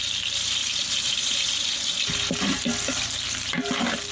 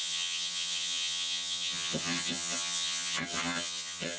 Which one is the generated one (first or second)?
second